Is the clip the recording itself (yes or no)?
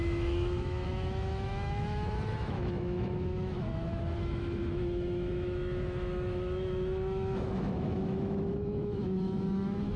no